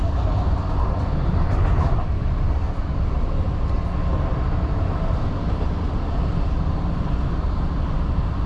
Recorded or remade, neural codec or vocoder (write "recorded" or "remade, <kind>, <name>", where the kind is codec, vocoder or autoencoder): recorded